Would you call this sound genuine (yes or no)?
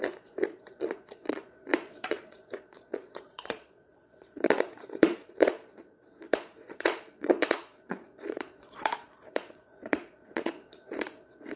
no